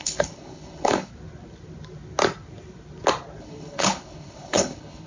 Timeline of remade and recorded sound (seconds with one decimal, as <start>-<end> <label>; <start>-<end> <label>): 0.0-1.1 remade; 1.1-3.4 recorded; 3.4-5.1 remade